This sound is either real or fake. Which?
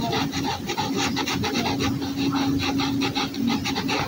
real